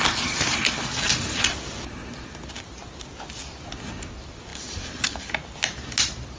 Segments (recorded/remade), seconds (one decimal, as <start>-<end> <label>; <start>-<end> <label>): 0.0-4.5 recorded; 4.5-5.3 remade; 5.3-6.4 recorded